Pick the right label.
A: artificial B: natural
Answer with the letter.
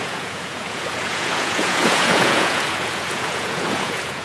A